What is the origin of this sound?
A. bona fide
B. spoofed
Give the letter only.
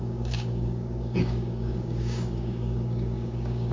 B